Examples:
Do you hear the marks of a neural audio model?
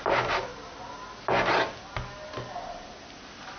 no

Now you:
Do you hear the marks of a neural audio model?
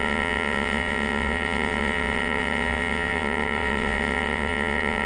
yes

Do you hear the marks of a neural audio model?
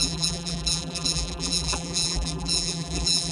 yes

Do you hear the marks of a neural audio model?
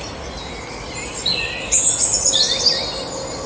no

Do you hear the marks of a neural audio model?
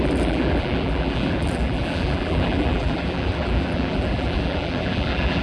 yes